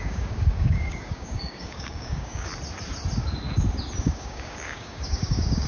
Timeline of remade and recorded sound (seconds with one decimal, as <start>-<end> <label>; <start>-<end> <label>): 0.0-2.5 remade; 2.5-4.0 recorded; 4.0-5.7 remade